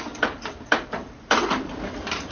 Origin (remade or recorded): remade